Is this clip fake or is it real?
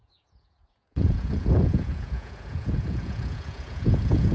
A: fake